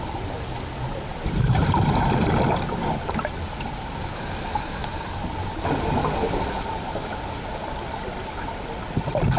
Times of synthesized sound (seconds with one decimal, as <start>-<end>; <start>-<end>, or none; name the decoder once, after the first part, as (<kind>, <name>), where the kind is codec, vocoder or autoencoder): 0.0-4.8 (vocoder, BigVGAN v2); 5.9-9.4